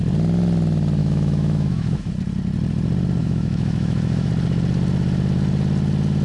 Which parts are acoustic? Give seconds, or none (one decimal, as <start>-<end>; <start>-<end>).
0.0-1.0; 2.1-3.2; 4.3-6.2